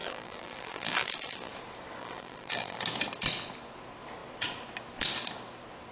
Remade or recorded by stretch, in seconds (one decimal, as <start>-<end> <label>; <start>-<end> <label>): 0.0-1.5 remade; 1.5-2.0 recorded; 2.0-2.8 remade; 2.8-5.9 recorded